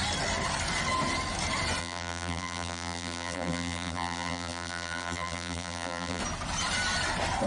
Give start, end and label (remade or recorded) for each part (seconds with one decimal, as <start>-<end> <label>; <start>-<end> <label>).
0.0-1.8 recorded; 1.8-6.2 remade; 6.2-7.5 recorded

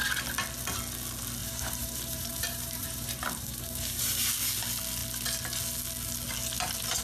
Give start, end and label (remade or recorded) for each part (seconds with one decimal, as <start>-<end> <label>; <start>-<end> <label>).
0.0-1.4 recorded; 1.4-4.3 remade; 4.3-7.0 recorded

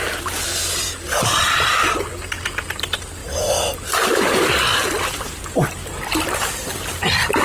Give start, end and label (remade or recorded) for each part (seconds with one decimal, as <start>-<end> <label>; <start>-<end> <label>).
0.0-7.4 recorded

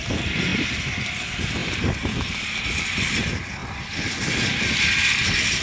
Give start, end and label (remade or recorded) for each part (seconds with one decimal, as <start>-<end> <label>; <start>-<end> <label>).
0.0-0.5 recorded; 0.5-1.2 remade; 1.2-1.6 recorded; 1.6-3.1 remade; 3.1-3.6 recorded; 3.6-4.1 remade; 4.1-5.6 recorded

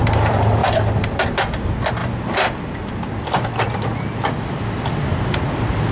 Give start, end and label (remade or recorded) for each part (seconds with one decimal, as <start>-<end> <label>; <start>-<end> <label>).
0.0-5.9 remade